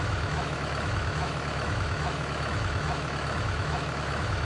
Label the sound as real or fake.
fake